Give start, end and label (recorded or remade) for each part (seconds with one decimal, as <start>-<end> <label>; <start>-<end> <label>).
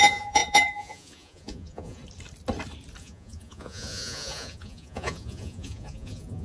0.0-2.0 remade; 2.0-3.0 recorded; 3.0-6.4 remade